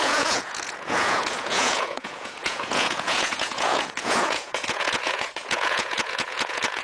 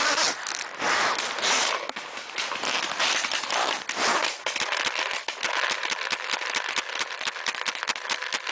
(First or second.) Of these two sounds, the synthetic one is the first